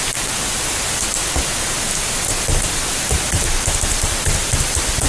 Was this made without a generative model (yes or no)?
yes